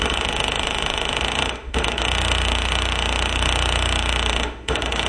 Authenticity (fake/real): fake